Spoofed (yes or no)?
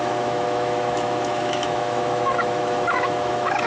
yes